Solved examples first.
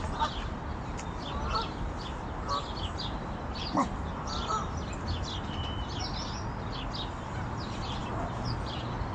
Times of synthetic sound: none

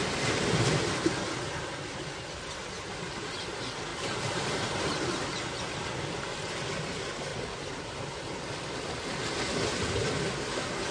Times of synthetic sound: 3.9-5.9 (vocoder, BigVGAN v2); 7.3-7.9